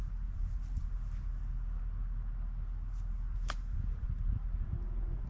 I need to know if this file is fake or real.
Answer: real